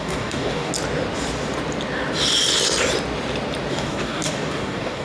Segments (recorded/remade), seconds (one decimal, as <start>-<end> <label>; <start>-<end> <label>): 0.0-0.7 remade; 0.7-3.7 recorded; 3.7-5.0 remade